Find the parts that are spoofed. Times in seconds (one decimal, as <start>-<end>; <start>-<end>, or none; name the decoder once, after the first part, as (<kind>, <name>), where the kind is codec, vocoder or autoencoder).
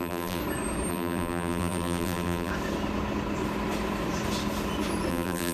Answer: 0.0-0.4 (vocoder, BigVGAN v2); 0.9-2.5; 5.1-5.5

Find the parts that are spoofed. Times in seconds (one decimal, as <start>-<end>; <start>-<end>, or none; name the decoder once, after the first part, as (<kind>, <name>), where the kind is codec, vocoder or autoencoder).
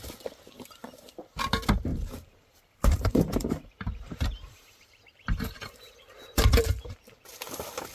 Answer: 1.9-6.6 (vocoder, BigVGAN v2)